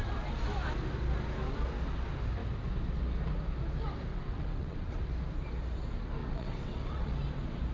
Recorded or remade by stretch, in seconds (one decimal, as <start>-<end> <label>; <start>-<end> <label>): 0.0-4.1 recorded; 4.1-5.1 remade; 5.1-6.2 recorded; 6.2-7.1 remade; 7.1-7.7 recorded